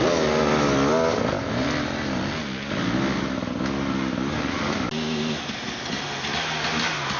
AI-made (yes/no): no